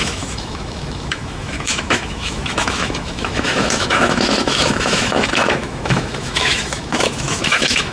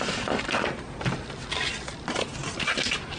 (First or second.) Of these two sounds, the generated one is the first